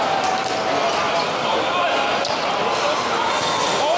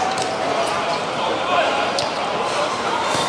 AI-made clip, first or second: second